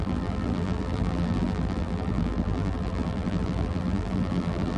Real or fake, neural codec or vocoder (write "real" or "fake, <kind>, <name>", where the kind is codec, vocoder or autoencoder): fake, vocoder, BigVGAN v2